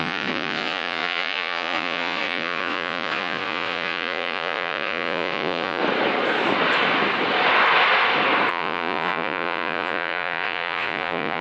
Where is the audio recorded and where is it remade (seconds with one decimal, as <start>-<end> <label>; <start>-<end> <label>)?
0.0-5.8 remade; 5.8-8.5 recorded; 8.5-11.4 remade